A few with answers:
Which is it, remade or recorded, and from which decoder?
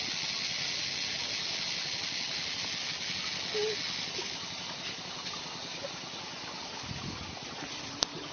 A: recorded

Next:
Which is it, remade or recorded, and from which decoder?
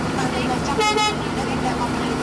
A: recorded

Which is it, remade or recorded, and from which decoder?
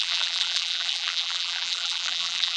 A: remade, vocoder, BigVGAN v2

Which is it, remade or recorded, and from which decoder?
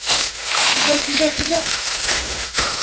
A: remade, autoencoder, DAC-VAE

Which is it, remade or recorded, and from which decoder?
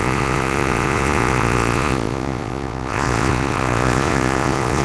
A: remade, vocoder, Vocos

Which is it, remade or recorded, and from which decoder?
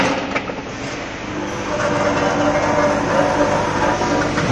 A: recorded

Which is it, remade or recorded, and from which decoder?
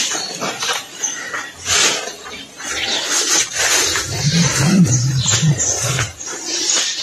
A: remade, vocoder, BigVGAN v2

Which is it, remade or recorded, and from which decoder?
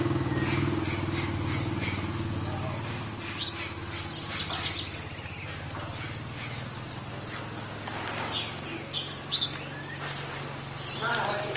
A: recorded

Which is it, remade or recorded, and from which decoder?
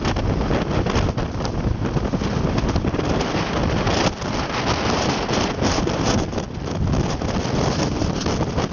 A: recorded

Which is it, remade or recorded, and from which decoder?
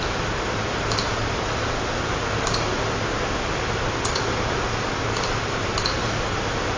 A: recorded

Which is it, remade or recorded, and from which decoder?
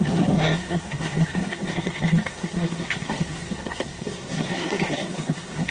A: remade, codec, SNAC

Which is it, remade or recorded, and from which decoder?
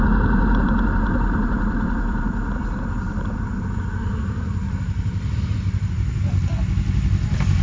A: recorded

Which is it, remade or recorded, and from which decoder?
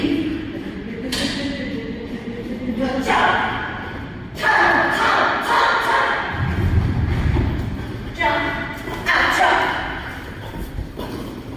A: recorded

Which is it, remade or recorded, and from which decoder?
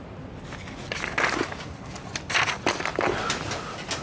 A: recorded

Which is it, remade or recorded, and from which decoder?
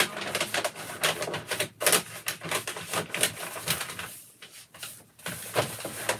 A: recorded